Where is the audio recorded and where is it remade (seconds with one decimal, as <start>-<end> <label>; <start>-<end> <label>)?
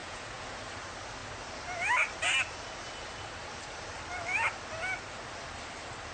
0.0-0.6 remade; 0.6-6.1 recorded